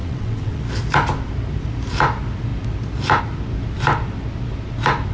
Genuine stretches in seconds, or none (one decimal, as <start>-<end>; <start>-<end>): 0.6-5.1